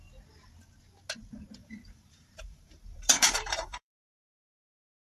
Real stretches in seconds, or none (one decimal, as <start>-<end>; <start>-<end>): 0.0-1.6